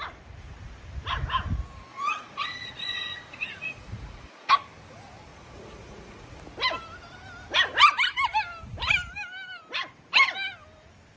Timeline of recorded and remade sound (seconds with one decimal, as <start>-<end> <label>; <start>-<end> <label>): 0.0-1.9 recorded; 1.9-4.5 remade; 4.5-5.3 recorded; 5.3-6.4 remade; 6.4-11.2 recorded